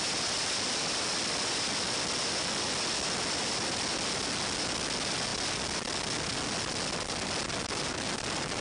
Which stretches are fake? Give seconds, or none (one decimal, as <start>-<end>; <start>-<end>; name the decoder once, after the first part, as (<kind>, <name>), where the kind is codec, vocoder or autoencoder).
none